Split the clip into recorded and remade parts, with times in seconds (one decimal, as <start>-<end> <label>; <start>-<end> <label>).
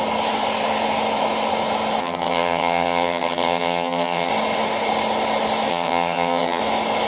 0.0-2.0 recorded; 2.0-4.3 remade; 4.3-5.7 recorded; 5.7-6.6 remade; 6.6-7.1 recorded